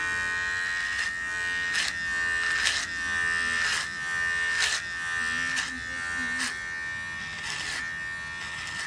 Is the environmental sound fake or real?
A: real